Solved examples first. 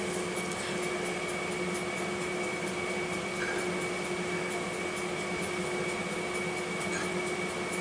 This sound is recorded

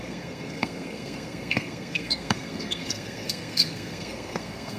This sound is remade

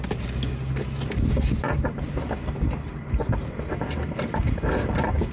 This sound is recorded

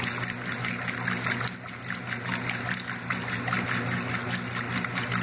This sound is recorded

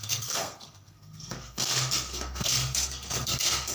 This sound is remade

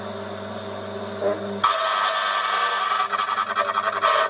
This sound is recorded